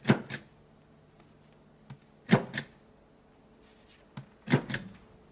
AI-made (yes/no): no